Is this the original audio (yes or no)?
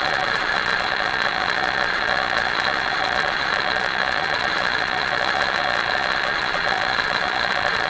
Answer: no